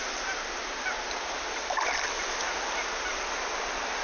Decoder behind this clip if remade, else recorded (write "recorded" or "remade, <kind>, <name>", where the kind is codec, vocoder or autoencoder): recorded